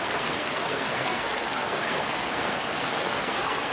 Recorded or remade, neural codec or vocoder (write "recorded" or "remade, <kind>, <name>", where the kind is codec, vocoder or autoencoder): remade, codec, SNAC